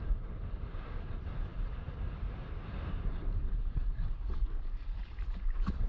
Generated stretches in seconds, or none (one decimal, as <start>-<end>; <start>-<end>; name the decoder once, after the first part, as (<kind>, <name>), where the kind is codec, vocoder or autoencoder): 0.0-5.9 (vocoder, BigVGAN v2)

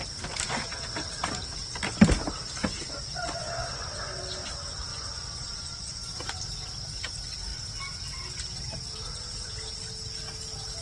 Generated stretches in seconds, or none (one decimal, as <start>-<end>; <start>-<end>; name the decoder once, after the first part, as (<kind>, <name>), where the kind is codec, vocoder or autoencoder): 2.6-4.2 (vocoder, Vocos); 4.9-6.1

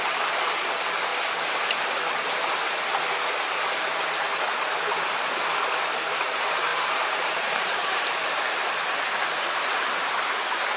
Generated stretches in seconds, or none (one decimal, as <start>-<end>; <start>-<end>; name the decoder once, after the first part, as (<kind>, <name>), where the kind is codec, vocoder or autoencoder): 6.7-8.4 (vocoder, BigVGAN v2)

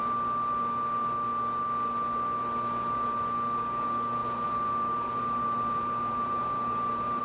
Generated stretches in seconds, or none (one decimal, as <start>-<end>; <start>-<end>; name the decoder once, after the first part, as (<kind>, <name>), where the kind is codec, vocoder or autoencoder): 4.2-7.2 (vocoder, BigVGAN v2)